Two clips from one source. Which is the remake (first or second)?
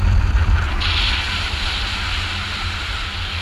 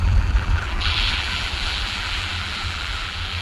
second